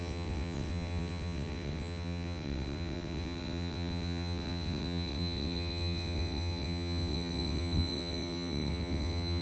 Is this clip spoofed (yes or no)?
yes